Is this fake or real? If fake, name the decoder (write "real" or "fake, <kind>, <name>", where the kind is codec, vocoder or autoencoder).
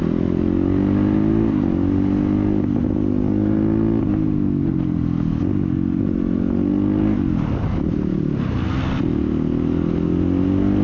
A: real